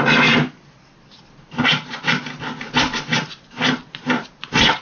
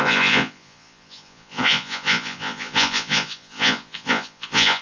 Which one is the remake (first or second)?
second